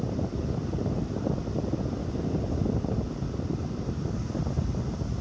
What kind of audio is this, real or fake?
real